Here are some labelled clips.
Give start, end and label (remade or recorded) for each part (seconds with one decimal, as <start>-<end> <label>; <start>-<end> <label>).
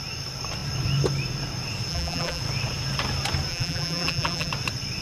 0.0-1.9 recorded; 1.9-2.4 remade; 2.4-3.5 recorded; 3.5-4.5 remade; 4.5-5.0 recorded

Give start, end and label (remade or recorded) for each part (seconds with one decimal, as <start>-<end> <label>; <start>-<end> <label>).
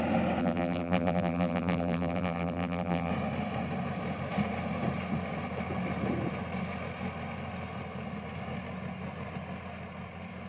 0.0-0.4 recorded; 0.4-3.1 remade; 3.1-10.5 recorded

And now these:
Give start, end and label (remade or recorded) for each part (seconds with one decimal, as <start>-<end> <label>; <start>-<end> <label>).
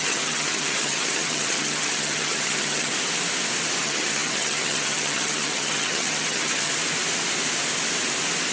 0.0-2.9 remade; 2.9-3.8 recorded; 3.8-6.7 remade; 6.7-8.5 recorded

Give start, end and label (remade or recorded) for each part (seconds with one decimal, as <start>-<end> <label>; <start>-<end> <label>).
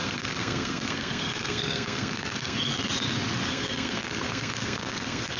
0.0-2.7 remade; 2.7-3.5 recorded; 3.5-5.4 remade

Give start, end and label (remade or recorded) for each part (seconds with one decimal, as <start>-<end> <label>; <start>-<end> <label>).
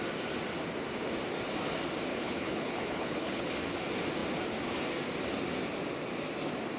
0.0-2.1 recorded; 2.1-3.5 remade; 3.5-6.8 recorded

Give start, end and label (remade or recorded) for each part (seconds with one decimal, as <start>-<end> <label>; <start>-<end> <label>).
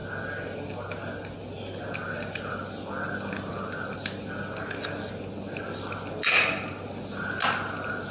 0.0-8.1 recorded